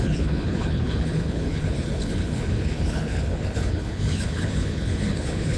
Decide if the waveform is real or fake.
fake